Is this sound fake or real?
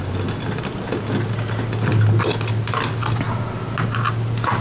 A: real